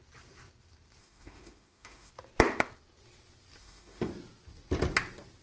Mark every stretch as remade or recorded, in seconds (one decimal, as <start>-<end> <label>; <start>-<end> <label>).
0.0-1.0 recorded; 1.0-2.1 remade; 2.1-3.6 recorded; 3.6-4.1 remade; 4.1-5.4 recorded